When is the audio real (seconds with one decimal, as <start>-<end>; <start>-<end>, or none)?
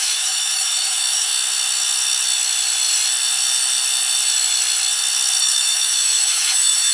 1.3-5.4